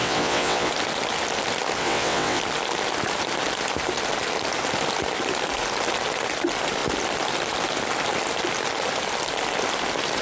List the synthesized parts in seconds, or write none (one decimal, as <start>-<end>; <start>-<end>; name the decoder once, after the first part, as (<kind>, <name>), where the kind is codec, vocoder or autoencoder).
0.0-0.7 (vocoder, WaveNeXt); 1.8-2.4

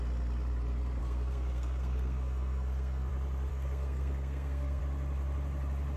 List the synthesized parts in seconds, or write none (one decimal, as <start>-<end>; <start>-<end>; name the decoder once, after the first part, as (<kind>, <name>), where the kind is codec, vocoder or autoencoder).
1.0-3.1 (codec, SNAC); 3.5-4.8

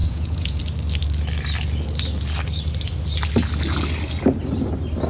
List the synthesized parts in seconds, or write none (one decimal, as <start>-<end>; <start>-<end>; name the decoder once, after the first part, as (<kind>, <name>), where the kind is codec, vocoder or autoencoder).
0.0-0.6 (vocoder, Vocos)

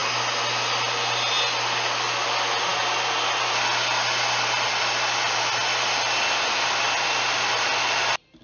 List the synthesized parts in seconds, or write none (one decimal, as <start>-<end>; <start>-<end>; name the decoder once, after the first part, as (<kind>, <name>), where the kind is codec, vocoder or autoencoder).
none

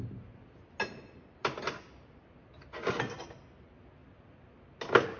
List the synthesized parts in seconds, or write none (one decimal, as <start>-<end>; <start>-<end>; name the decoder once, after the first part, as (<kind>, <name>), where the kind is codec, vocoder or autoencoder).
none

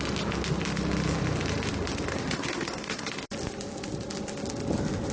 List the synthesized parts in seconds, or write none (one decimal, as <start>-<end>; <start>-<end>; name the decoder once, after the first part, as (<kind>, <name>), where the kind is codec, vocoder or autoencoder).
2.1-3.1 (codec, SNAC)